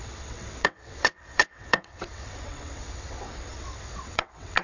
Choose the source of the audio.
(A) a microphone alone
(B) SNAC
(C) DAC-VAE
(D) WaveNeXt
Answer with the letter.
D